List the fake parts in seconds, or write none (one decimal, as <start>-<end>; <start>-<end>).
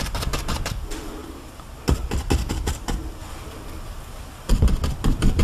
0.0-5.4